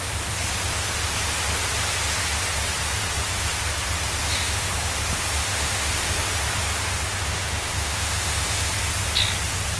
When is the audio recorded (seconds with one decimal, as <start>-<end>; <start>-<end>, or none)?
0.0-4.2; 4.7-5.4; 5.9-7.1; 8.7-9.8